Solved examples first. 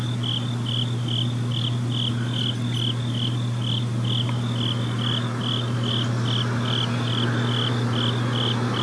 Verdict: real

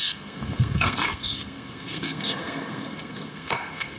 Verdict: fake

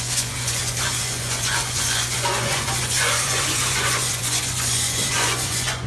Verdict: fake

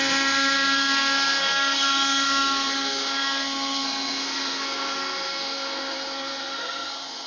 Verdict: fake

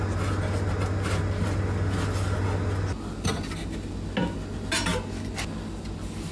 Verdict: real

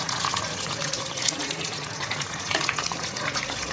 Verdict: fake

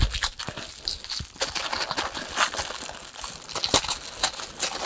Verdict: real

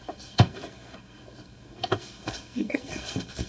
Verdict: fake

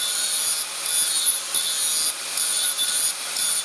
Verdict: real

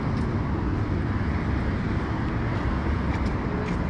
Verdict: real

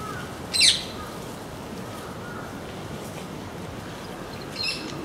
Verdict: real